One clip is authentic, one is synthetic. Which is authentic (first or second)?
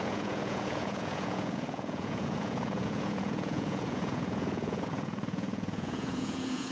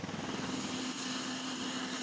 second